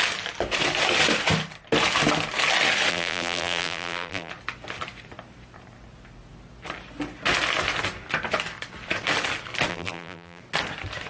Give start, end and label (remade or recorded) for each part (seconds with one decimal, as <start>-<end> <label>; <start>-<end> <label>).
0.0-2.9 recorded; 2.9-4.3 remade; 4.3-9.7 recorded; 9.7-10.4 remade; 10.4-11.1 recorded